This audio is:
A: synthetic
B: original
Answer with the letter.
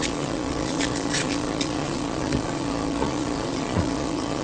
A